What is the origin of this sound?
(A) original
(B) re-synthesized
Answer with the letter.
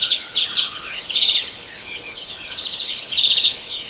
B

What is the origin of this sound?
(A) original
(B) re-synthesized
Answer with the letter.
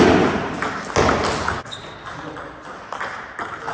A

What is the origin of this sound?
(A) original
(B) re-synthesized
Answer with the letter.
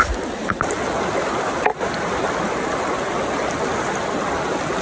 A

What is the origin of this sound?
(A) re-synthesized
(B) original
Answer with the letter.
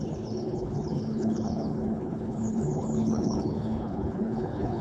A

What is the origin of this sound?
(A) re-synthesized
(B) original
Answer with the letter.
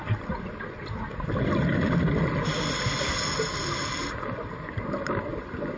B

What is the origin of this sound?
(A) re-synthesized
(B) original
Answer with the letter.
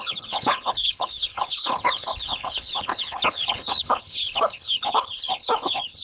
A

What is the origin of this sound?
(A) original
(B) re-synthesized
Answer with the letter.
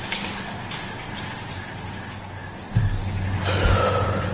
A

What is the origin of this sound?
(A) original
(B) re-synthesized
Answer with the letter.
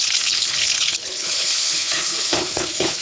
B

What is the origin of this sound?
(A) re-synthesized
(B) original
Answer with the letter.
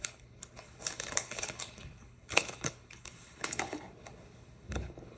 A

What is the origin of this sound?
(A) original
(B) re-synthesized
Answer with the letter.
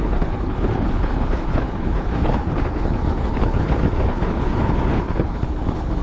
B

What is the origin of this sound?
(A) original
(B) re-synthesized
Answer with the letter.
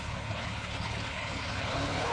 B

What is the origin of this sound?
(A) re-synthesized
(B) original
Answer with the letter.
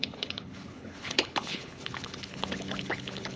A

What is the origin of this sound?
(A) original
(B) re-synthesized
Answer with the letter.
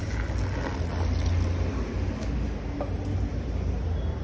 A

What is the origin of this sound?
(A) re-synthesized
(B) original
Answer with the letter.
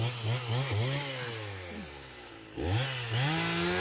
B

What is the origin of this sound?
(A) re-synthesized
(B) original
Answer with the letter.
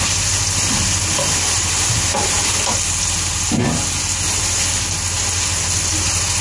B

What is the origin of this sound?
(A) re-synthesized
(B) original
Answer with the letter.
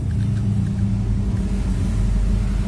B